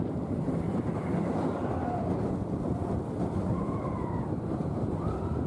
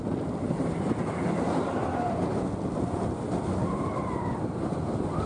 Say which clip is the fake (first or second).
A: first